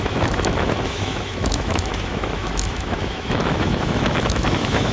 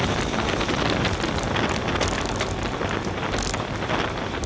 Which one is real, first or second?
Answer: second